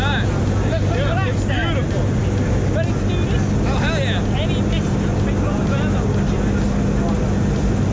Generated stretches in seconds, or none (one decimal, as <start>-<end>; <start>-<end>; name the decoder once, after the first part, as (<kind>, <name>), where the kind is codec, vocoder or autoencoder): none